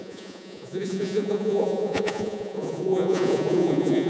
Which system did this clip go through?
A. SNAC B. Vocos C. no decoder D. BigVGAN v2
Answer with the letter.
B